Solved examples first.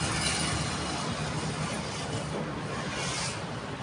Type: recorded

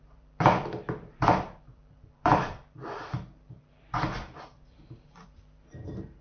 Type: remade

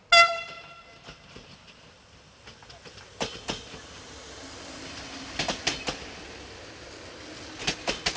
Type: recorded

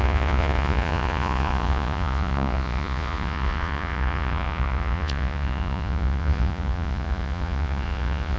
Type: remade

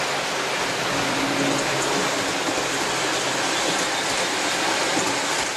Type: recorded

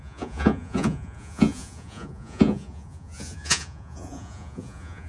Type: remade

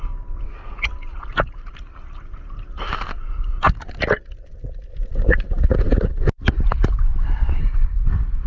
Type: recorded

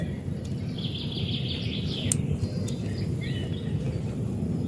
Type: recorded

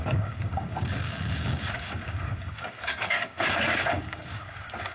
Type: remade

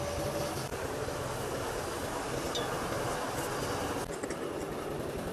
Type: recorded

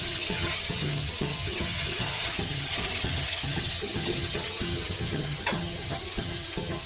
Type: remade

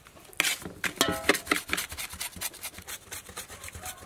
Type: recorded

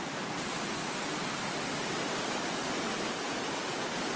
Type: recorded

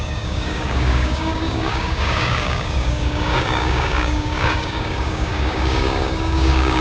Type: remade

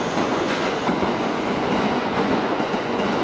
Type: remade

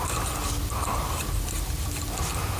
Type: recorded